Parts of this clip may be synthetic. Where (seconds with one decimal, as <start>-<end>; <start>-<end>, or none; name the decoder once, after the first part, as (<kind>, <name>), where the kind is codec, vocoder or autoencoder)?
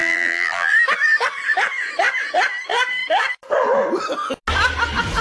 0.0-0.7 (vocoder, BigVGAN v2)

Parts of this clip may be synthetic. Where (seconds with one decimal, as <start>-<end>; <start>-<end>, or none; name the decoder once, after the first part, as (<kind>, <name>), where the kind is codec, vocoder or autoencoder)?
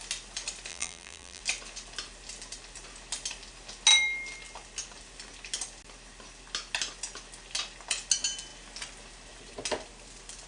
0.7-1.4 (vocoder, BigVGAN v2)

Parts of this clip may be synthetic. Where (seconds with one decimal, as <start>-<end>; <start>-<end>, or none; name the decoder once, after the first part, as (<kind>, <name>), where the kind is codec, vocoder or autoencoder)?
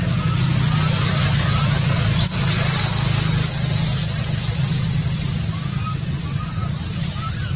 6.6-7.6 (vocoder, BigVGAN v2)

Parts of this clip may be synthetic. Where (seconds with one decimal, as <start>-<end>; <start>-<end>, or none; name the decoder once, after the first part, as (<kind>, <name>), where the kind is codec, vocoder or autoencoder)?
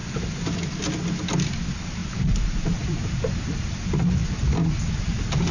2.0-3.4 (vocoder, BigVGAN v2)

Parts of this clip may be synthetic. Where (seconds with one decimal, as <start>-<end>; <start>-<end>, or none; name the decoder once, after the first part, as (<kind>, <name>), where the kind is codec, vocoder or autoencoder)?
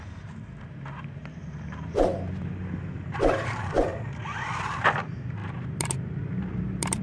0.0-3.9 (vocoder, BigVGAN v2); 5.0-7.0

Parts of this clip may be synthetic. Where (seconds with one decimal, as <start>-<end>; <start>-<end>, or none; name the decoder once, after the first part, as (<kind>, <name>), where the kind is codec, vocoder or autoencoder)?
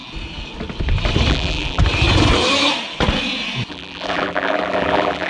1.3-1.8 (vocoder, BigVGAN v2); 3.7-5.3